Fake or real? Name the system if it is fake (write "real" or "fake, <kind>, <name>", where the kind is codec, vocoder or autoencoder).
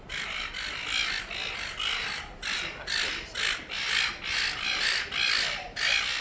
real